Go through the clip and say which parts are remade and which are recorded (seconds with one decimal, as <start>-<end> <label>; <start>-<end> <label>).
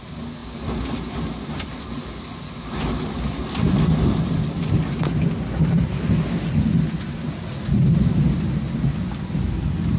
0.0-0.4 remade; 0.4-4.0 recorded; 4.0-6.7 remade; 6.7-9.3 recorded; 9.3-10.0 remade